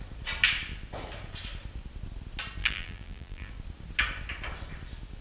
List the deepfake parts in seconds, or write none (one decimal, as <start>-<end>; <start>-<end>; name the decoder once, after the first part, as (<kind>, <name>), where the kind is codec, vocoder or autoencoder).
2.6-3.5 (vocoder, BigVGAN v2)